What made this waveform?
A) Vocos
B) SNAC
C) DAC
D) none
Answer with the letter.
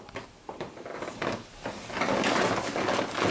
D